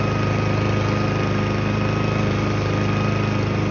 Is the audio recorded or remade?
recorded